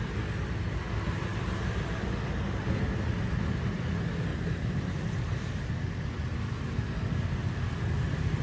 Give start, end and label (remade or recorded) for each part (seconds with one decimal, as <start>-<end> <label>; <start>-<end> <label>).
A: 0.0-4.3 recorded; 4.3-5.7 remade; 5.7-8.4 recorded